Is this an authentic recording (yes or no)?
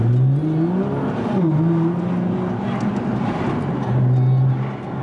yes